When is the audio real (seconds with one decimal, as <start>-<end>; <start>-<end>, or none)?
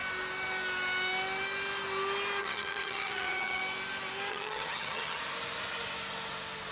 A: 0.0-2.4; 3.6-4.3; 5.2-6.7